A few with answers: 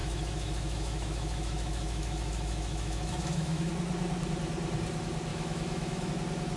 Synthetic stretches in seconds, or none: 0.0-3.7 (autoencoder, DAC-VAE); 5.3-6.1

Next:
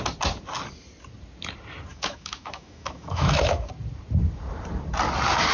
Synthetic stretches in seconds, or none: 1.9-3.7 (autoencoder, DAC-VAE)

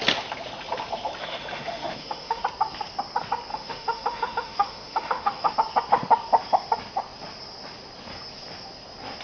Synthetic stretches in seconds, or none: 1.2-2.4 (autoencoder, DAC-VAE); 3.5-5.5